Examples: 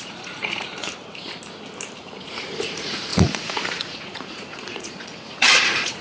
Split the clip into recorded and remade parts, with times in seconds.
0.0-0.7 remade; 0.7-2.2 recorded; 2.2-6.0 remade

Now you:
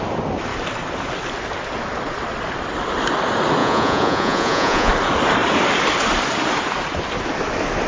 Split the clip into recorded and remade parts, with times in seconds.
0.0-3.6 recorded; 3.6-4.9 remade; 4.9-7.9 recorded

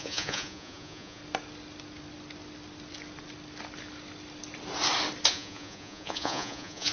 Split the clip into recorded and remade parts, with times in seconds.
0.0-1.2 remade; 1.2-5.3 recorded; 5.3-6.9 remade

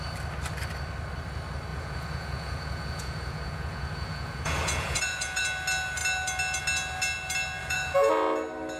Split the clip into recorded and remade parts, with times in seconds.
0.0-1.7 recorded; 1.7-5.4 remade; 5.4-7.6 recorded; 7.6-8.1 remade; 8.1-8.8 recorded

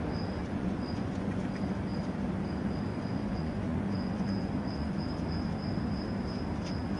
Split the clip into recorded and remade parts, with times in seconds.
0.0-0.4 recorded; 0.4-1.4 remade; 1.4-2.9 recorded; 2.9-5.0 remade; 5.0-7.0 recorded